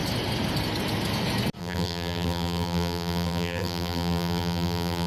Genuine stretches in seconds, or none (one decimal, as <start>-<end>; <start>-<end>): 0.0-1.6